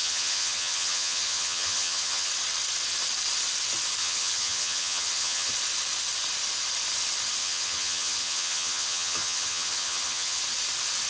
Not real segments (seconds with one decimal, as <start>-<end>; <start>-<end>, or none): 0.0-2.3; 4.0-5.5; 7.4-10.4

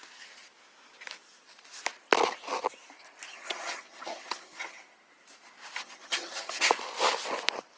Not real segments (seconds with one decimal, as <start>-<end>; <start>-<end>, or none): 3.3-4.8; 5.8-6.7

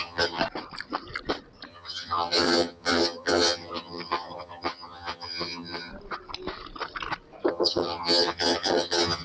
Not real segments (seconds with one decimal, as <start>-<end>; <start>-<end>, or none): 0.0-0.4; 1.7-5.9; 7.5-9.2

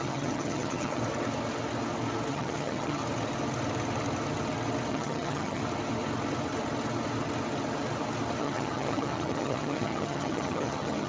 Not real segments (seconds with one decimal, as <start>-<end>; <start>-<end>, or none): 0.0-1.0; 2.3-3.0; 4.9-5.6; 8.4-11.1

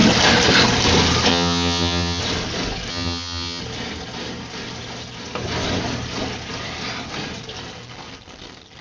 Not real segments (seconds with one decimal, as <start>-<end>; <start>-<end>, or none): 1.3-2.2; 2.9-3.6

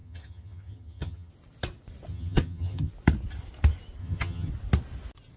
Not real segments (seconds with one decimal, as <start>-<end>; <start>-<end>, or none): 0.0-1.3; 2.1-2.9; 4.0-4.5